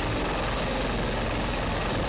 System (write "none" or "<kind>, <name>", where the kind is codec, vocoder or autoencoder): none